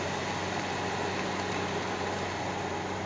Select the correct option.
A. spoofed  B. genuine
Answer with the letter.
B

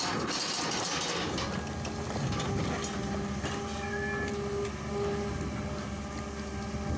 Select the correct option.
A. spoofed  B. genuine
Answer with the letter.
B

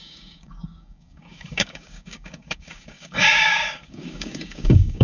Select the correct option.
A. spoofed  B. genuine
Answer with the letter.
A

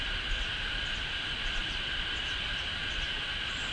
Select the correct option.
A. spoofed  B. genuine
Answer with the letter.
B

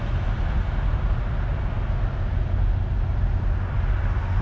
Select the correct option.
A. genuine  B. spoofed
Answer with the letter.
A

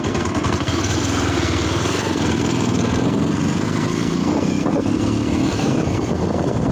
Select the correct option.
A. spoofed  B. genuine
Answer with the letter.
A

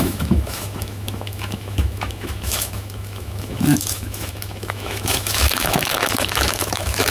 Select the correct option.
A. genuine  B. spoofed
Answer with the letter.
B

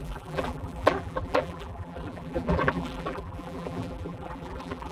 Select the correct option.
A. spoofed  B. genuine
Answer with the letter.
A